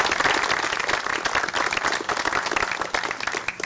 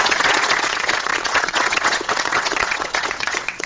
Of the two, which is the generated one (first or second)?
second